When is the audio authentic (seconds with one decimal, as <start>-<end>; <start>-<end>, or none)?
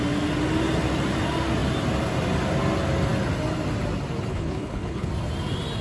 0.0-4.3; 5.1-5.8